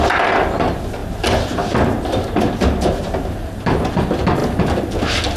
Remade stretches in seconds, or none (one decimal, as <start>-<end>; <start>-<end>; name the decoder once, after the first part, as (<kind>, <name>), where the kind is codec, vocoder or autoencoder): none